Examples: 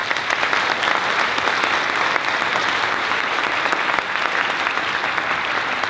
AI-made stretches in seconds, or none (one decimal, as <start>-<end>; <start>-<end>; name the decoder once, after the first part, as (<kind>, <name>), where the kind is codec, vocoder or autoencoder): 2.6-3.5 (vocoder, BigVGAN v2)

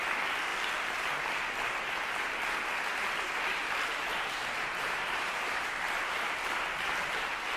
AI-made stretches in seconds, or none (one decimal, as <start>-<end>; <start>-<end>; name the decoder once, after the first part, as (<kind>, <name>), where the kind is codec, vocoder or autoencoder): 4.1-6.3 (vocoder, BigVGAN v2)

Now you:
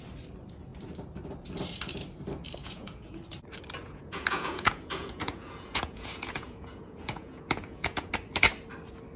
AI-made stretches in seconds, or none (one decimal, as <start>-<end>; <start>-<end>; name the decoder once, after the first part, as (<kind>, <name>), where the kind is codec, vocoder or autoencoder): 2.6-3.2 (vocoder, Vocos); 3.8-8.1

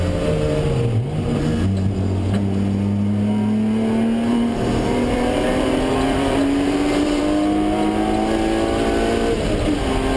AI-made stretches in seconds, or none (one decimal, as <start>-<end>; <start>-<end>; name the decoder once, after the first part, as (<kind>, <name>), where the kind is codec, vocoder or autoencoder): 4.3-7.2 (vocoder, BigVGAN v2)